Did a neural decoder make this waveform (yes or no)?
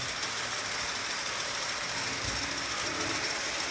no